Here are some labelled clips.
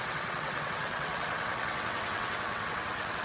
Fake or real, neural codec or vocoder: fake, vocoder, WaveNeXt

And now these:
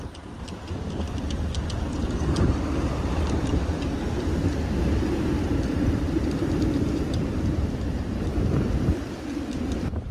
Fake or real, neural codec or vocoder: fake, vocoder, BigVGAN v2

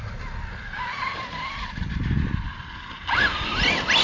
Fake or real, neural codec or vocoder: real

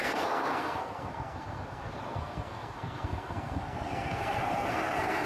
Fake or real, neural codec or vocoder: fake, codec, SNAC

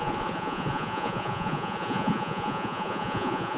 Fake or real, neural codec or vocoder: fake, vocoder, Vocos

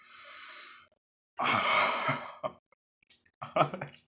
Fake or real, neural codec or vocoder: real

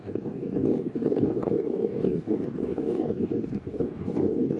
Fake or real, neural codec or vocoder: fake, codec, DAC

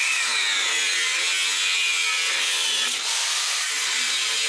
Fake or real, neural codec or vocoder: real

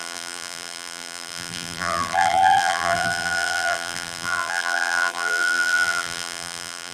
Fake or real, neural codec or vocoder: fake, vocoder, BigVGAN v2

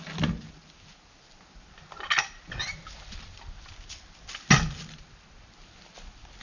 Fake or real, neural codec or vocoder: real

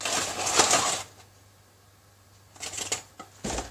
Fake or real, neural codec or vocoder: real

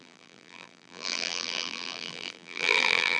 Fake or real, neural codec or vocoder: fake, vocoder, BigVGAN v2